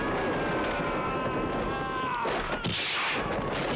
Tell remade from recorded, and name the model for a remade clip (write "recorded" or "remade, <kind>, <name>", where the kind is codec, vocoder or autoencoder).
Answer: recorded